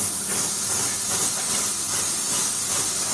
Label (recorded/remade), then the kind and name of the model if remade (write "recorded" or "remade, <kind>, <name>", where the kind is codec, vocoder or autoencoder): recorded